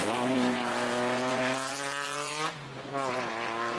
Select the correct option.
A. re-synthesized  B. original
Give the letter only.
A